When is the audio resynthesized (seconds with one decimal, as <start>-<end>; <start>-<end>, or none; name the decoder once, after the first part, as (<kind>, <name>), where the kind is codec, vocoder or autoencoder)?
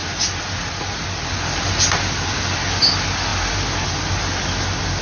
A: none